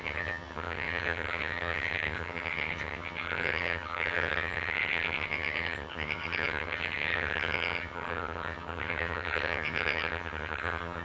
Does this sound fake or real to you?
fake